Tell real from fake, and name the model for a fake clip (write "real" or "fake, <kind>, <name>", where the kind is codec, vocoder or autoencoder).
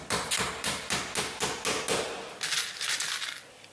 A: real